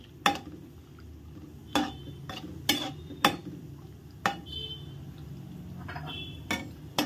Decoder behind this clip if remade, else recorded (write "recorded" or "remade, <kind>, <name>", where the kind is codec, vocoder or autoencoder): recorded